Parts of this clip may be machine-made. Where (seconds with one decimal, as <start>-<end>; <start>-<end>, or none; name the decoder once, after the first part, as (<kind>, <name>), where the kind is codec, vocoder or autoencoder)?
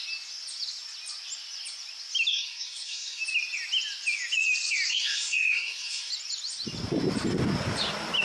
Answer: 2.3-3.2 (codec, SNAC); 4.9-6.1